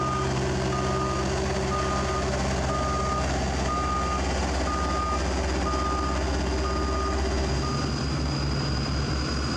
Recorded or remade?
recorded